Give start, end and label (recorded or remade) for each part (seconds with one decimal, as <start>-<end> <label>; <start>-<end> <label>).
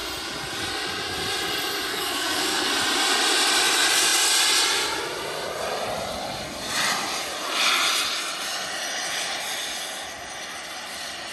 0.0-1.9 recorded; 1.9-2.7 remade; 2.7-11.3 recorded